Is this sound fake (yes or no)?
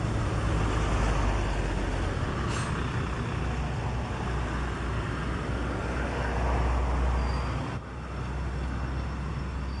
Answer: no